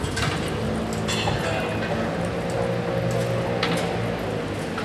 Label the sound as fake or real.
real